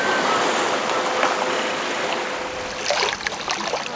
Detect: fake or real real